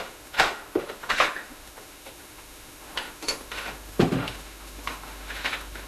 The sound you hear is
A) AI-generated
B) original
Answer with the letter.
A